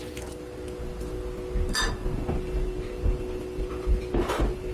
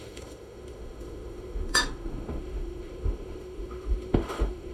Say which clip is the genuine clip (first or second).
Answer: first